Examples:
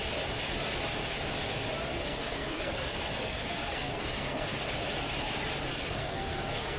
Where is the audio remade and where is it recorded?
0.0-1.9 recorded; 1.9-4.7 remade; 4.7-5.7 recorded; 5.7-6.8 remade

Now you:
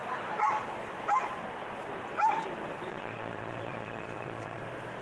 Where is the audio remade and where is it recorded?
0.0-2.9 recorded; 2.9-4.6 remade; 4.6-5.0 recorded

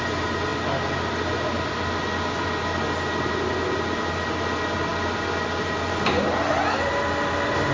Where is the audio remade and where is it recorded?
0.0-7.7 recorded

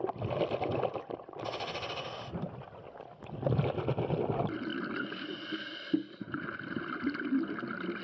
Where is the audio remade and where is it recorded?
0.0-8.0 recorded

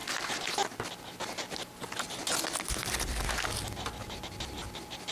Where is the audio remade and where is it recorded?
0.0-5.1 recorded